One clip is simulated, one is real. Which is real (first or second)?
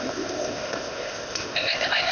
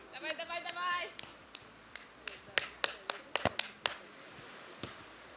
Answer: second